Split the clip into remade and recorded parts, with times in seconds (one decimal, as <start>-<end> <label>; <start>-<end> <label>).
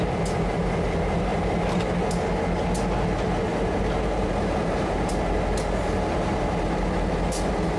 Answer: 0.0-1.3 recorded; 1.3-2.0 remade; 2.0-3.5 recorded; 3.5-5.1 remade; 5.1-5.8 recorded; 5.8-6.3 remade; 6.3-7.8 recorded